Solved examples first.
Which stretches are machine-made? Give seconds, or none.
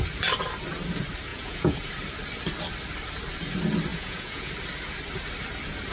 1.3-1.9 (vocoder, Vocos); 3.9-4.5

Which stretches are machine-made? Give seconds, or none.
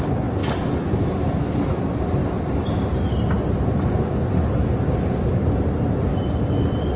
none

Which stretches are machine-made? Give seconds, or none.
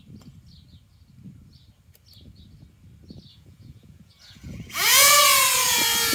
3.3-5.2 (vocoder, Vocos)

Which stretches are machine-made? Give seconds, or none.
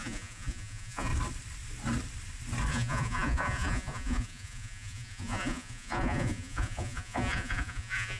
0.0-1.1 (vocoder, Vocos); 2.7-8.2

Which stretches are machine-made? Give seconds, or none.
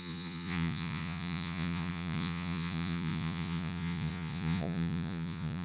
0.0-5.6 (vocoder, Vocos)